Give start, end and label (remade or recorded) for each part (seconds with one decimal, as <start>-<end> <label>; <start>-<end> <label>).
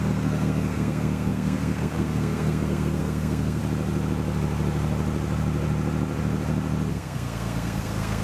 0.0-3.6 remade; 3.6-6.9 recorded; 6.9-8.2 remade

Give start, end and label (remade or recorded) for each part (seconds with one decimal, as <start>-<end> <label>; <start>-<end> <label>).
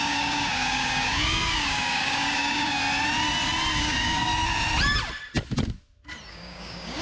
0.0-2.8 remade; 2.8-3.8 recorded; 3.8-4.3 remade; 4.3-6.3 recorded; 6.3-7.0 remade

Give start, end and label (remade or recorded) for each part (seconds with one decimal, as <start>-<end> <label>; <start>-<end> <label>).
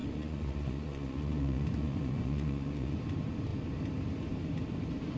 0.0-3.0 remade; 3.0-5.2 recorded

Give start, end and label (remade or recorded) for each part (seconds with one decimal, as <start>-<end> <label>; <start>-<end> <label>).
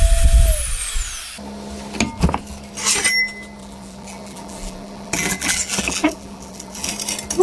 0.0-3.6 recorded; 3.6-6.9 remade; 6.9-7.4 recorded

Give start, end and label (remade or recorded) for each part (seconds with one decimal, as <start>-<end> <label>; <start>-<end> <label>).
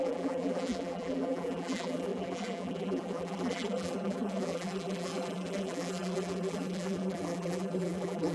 0.0-8.3 remade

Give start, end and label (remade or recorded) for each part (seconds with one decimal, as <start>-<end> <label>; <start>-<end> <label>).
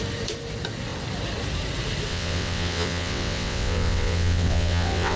0.0-2.1 recorded; 2.1-5.2 remade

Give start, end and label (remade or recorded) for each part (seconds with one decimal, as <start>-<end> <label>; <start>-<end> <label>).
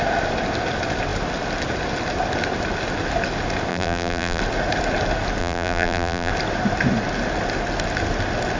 0.0-3.7 recorded; 3.7-4.4 remade; 4.4-5.4 recorded; 5.4-6.3 remade; 6.3-8.6 recorded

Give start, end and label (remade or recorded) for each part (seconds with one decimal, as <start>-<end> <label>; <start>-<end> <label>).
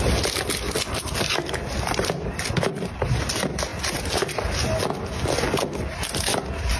0.0-6.8 recorded